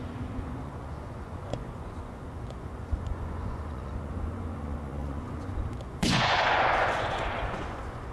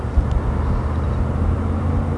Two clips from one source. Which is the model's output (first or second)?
first